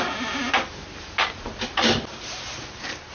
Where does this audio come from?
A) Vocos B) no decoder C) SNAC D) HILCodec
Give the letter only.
B